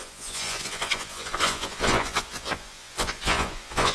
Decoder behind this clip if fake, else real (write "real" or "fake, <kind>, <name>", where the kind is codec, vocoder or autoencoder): fake, vocoder, Vocos